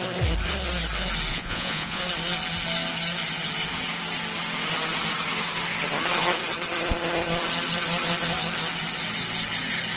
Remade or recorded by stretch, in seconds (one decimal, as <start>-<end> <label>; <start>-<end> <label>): 0.0-1.3 recorded; 1.3-2.0 remade; 2.0-10.0 recorded